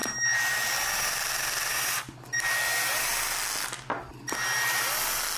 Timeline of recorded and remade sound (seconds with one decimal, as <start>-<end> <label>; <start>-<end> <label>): 0.0-5.4 recorded